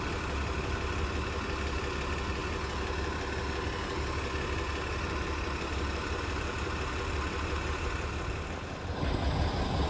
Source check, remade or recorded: recorded